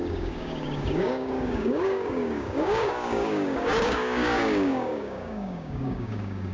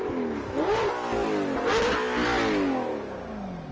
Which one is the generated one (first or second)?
first